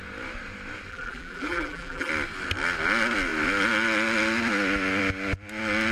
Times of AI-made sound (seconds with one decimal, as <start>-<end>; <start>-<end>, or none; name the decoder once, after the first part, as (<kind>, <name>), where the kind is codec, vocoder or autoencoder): 0.9-2.1 (vocoder, BigVGAN v2)